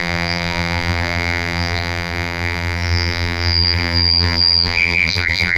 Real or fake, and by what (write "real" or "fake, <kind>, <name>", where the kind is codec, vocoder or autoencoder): fake, vocoder, BigVGAN v2